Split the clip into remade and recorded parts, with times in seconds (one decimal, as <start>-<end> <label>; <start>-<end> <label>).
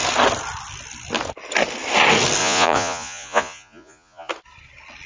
0.0-2.4 recorded; 2.4-4.3 remade; 4.3-5.1 recorded